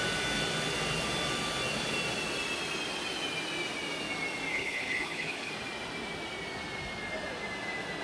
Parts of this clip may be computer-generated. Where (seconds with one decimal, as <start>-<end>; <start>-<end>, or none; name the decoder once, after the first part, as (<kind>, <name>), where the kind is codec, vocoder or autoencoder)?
4.5-5.5 (codec, HILCodec)